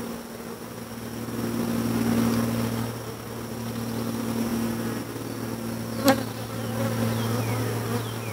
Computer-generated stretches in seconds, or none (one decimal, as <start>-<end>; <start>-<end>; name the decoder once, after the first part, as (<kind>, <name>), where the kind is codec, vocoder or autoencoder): none